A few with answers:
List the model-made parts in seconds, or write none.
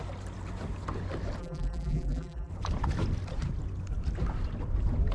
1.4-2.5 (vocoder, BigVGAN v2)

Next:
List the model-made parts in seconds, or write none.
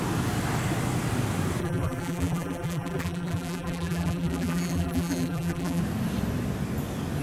1.6-5.8 (vocoder, BigVGAN v2)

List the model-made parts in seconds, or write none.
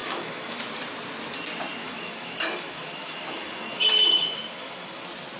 0.0-0.6 (autoencoder, DAC-VAE); 1.8-5.0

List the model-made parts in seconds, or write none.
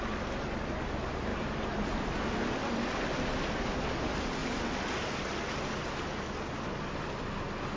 none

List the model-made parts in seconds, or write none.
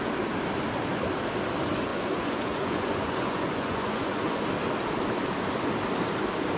1.9-4.4 (vocoder, Vocos)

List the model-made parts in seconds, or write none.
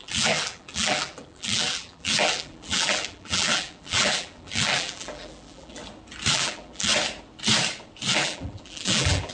0.0-5.8 (vocoder, BigVGAN v2); 6.3-6.9; 8.1-9.3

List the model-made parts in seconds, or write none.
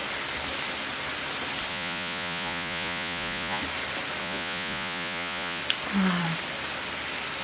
1.7-3.6 (vocoder, Vocos); 4.2-5.6